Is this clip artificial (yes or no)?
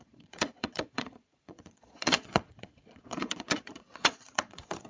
yes